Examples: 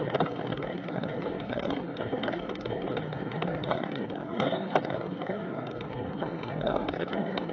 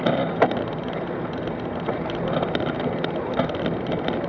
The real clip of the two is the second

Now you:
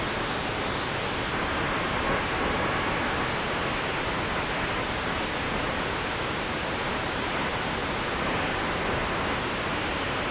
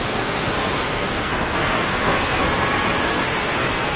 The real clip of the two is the first